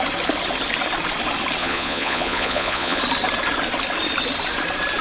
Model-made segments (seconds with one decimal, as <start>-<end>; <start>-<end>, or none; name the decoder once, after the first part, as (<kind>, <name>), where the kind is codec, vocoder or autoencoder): 1.6-3.0 (vocoder, Vocos)